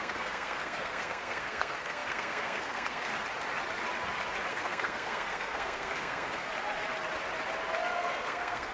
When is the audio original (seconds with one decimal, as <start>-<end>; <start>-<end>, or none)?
3.1-4.5; 6.5-7.9